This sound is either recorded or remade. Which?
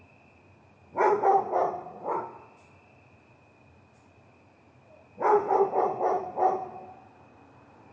recorded